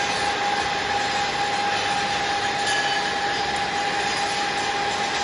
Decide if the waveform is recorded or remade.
recorded